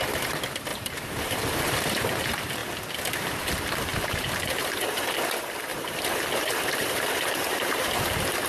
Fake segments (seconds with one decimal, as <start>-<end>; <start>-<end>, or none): 0.7-1.9; 3.9-5.1; 5.7-8.0